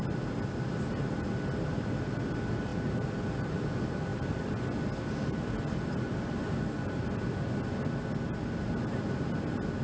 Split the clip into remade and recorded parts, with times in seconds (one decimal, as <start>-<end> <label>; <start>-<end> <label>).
0.0-2.7 recorded; 2.7-3.6 remade; 3.6-9.8 recorded